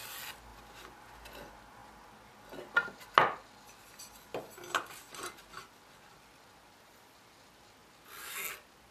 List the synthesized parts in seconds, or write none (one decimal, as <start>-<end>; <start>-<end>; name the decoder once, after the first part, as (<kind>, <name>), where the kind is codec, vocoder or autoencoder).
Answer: none